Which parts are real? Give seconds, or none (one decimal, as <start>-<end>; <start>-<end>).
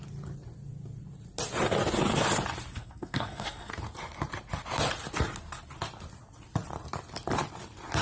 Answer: 0.0-2.7; 3.7-8.0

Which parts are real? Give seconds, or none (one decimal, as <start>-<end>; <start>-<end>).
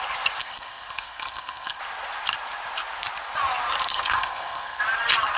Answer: 0.0-0.4; 1.8-3.9; 4.8-5.4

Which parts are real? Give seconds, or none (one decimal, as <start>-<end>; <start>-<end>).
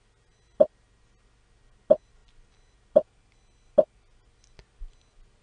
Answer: 0.0-5.4